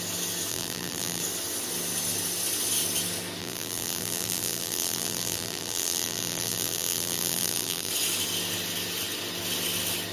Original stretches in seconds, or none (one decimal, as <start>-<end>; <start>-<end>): 0.0-0.5; 1.2-3.4; 7.9-10.1